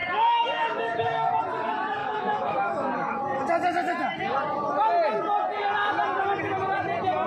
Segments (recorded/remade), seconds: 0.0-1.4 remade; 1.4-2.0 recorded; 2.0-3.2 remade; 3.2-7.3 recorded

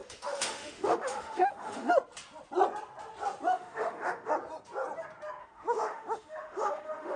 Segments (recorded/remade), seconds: 0.0-1.9 remade; 1.9-3.5 recorded; 3.5-4.3 remade; 4.3-5.4 recorded; 5.4-7.2 remade